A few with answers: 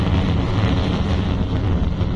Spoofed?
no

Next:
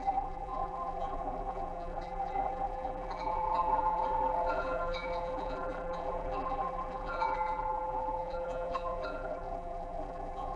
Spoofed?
yes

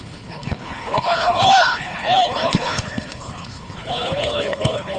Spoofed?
yes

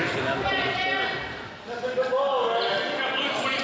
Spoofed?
no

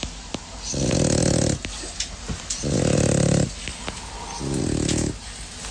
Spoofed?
no